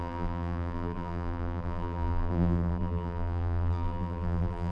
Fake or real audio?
fake